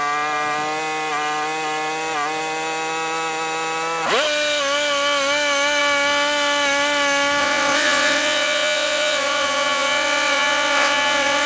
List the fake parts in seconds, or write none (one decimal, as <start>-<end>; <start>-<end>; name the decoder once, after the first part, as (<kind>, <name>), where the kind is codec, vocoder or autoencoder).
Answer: 7.4-11.5 (vocoder, WaveNeXt)